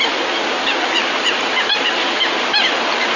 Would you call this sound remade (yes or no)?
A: no